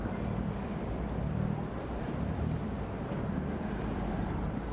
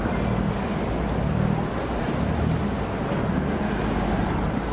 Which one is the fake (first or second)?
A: first